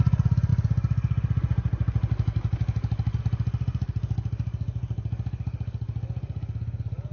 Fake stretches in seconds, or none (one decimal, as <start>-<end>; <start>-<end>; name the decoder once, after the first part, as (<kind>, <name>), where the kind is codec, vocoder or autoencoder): none